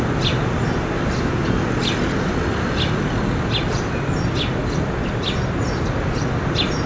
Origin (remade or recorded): recorded